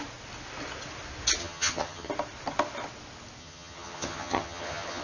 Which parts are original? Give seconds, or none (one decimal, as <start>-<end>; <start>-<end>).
0.0-1.4; 2.1-3.4